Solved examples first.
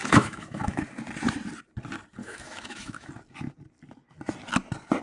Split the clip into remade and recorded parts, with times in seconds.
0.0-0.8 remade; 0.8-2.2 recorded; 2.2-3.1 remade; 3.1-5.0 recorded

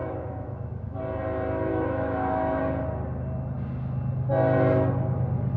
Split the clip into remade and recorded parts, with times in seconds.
0.0-1.0 remade; 1.0-1.7 recorded; 1.7-2.6 remade; 2.6-5.6 recorded

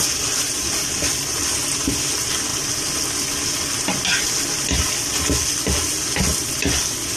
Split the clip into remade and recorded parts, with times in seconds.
0.0-7.2 recorded

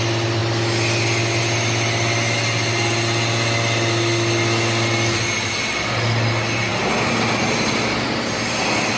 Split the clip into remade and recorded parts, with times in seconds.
0.0-9.0 recorded

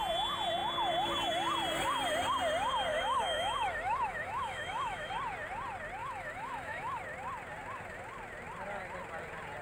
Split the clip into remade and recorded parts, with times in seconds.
0.0-2.9 recorded; 2.9-5.1 remade; 5.1-6.0 recorded; 6.0-7.0 remade; 7.0-9.6 recorded

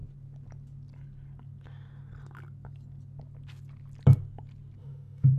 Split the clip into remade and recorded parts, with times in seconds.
0.0-4.8 recorded; 4.8-5.4 remade

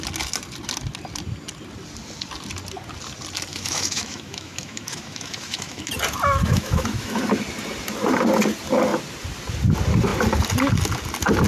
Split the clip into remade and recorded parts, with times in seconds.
0.0-3.5 recorded; 3.5-5.9 remade; 5.9-6.4 recorded; 6.4-7.2 remade; 7.2-11.5 recorded

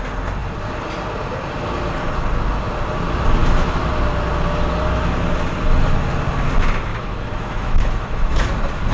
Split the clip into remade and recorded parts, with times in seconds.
0.0-6.9 recorded; 6.9-8.5 remade; 8.5-8.9 recorded